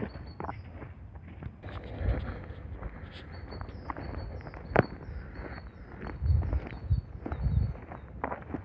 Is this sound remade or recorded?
recorded